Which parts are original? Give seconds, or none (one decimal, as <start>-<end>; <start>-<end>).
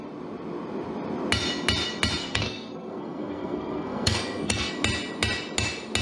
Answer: 0.0-2.2; 4.7-6.0